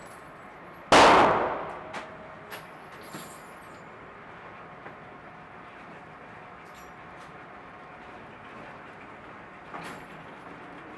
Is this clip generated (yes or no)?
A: no